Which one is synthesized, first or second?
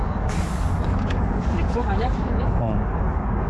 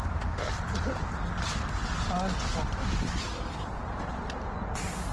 first